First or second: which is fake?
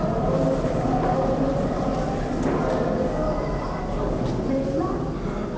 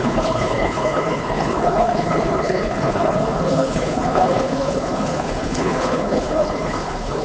second